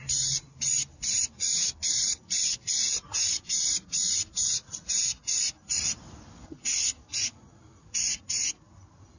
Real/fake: real